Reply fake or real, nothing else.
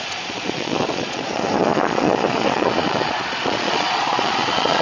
fake